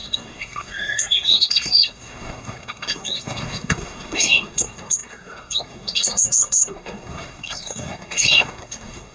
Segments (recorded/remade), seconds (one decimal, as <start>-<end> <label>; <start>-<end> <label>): 0.0-9.1 remade